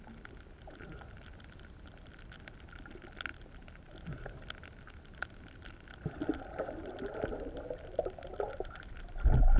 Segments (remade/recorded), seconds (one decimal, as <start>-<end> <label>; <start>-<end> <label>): 0.0-9.6 recorded